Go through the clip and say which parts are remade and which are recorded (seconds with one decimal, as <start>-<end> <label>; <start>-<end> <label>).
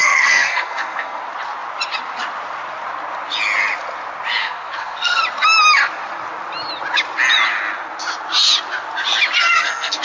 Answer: 0.0-1.2 remade; 1.2-4.4 recorded; 4.4-5.2 remade; 5.2-9.4 recorded; 9.4-10.0 remade